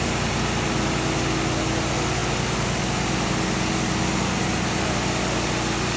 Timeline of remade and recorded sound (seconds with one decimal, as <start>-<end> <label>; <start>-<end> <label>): 0.0-6.0 recorded